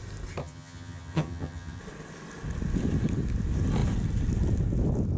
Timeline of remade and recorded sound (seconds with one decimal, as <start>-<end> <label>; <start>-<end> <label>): 0.0-0.4 recorded; 0.4-1.8 remade; 1.8-5.2 recorded